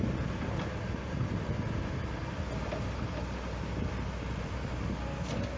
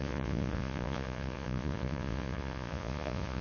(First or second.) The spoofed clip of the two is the second